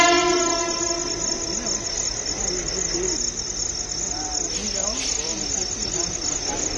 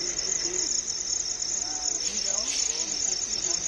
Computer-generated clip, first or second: second